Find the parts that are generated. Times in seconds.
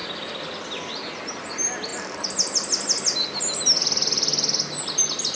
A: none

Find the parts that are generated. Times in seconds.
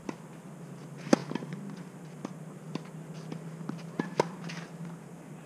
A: none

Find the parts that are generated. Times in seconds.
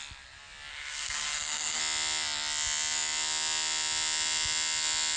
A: 0.7-1.8 (codec, SNAC)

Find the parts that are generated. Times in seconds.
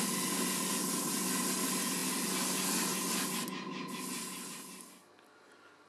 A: none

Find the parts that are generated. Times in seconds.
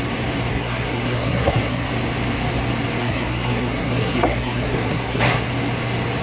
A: 0.5-1.9 (codec, SNAC); 3.0-5.5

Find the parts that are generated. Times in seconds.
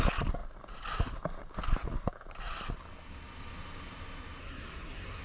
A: 4.4-5.2 (codec, SNAC)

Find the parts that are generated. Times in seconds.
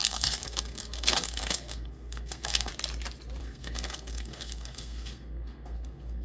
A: 0.0-2.7 (codec, SNAC); 3.4-6.2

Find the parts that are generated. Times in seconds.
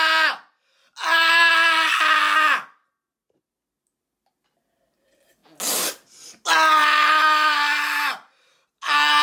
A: none